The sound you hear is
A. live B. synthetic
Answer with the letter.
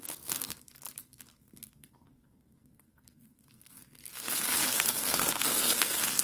B